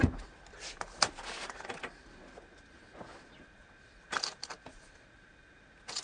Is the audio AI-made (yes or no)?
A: no